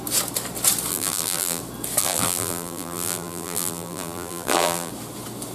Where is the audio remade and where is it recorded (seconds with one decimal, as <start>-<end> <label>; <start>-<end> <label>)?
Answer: 0.0-0.9 recorded; 0.9-1.6 remade; 1.6-2.0 recorded; 2.0-4.9 remade; 4.9-5.5 recorded